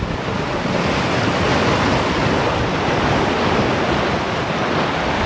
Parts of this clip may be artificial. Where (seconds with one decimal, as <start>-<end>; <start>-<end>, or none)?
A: none